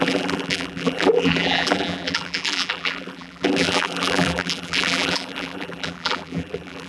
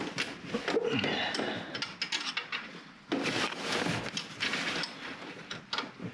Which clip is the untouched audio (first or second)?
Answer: second